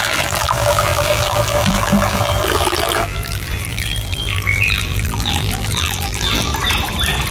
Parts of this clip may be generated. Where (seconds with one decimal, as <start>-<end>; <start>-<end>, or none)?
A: 0.0-6.5